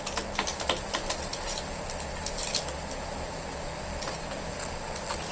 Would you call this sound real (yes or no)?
yes